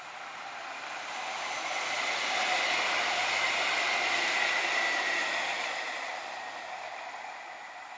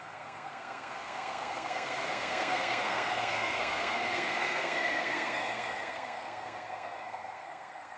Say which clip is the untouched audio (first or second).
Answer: first